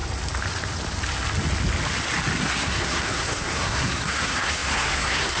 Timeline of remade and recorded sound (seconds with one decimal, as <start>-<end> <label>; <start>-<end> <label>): 0.0-2.4 recorded; 2.4-5.4 remade